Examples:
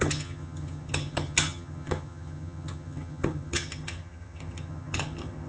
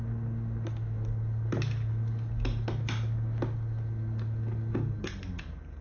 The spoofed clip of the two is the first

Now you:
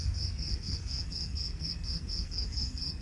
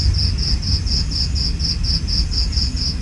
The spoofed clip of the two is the first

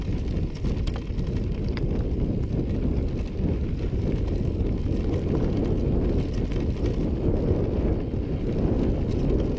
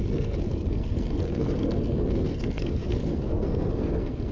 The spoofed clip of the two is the second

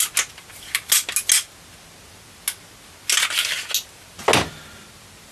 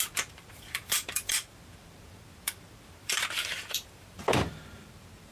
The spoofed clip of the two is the second